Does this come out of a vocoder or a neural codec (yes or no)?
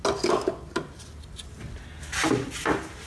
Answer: no